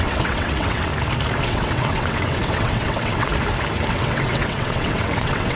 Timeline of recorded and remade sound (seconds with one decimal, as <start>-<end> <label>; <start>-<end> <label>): 0.0-0.9 remade; 0.9-1.4 recorded; 1.4-3.3 remade; 3.3-3.9 recorded; 3.9-5.6 remade